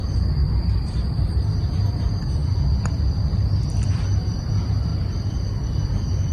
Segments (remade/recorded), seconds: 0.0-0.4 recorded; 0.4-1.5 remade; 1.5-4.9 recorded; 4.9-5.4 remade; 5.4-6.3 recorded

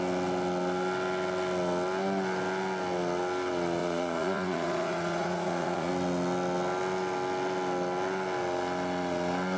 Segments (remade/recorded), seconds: 0.0-3.8 recorded; 3.8-5.9 remade; 5.9-9.6 recorded

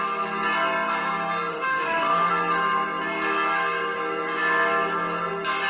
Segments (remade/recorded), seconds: 0.0-1.5 recorded; 1.5-2.3 remade; 2.3-5.7 recorded

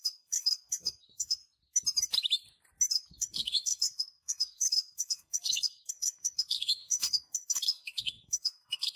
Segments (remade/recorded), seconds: 0.0-1.4 remade; 1.4-2.9 recorded; 2.9-9.0 remade

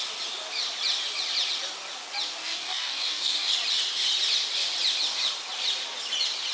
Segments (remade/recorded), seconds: 0.0-2.4 recorded; 2.4-3.5 remade; 3.5-6.5 recorded

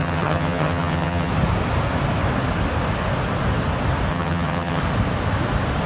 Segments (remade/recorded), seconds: 0.0-1.3 remade; 1.3-4.1 recorded; 4.1-4.8 remade; 4.8-5.9 recorded